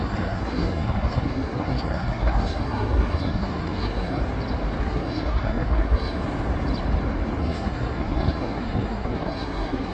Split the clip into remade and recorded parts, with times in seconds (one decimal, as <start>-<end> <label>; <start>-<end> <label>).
0.0-4.2 remade; 4.2-4.8 recorded; 4.8-6.2 remade; 6.2-7.4 recorded; 7.4-9.9 remade